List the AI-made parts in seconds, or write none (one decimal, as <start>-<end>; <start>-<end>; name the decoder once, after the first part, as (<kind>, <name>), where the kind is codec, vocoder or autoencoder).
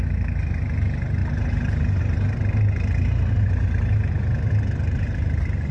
none